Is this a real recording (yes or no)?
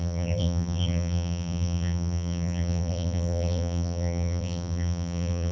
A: no